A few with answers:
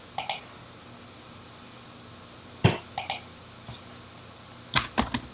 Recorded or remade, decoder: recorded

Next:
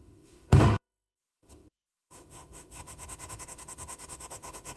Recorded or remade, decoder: remade, autoencoder, DAC-VAE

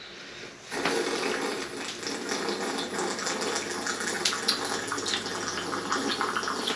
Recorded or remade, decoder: recorded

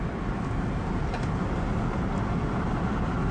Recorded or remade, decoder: recorded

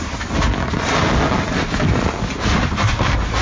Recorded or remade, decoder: recorded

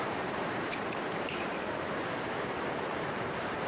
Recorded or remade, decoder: remade, vocoder, BigVGAN v2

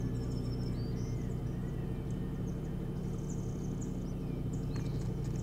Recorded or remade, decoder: recorded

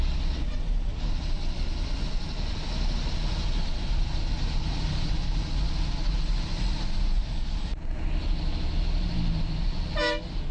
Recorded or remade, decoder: recorded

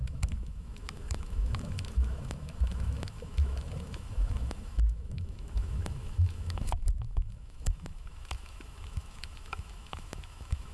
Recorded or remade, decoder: remade, autoencoder, DAC-VAE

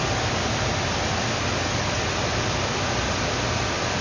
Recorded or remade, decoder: remade, vocoder, BigVGAN v2